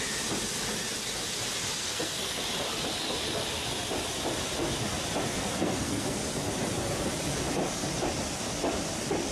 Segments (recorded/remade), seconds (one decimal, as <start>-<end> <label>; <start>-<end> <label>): 0.0-1.8 recorded; 1.8-2.4 remade; 2.4-5.3 recorded; 5.3-6.5 remade; 6.5-9.3 recorded